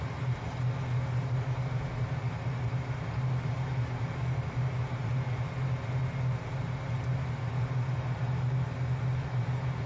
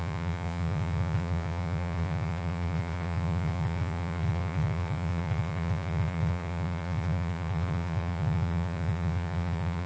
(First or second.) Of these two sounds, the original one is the first